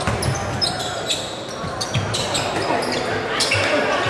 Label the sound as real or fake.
real